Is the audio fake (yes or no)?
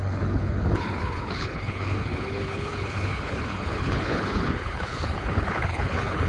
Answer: yes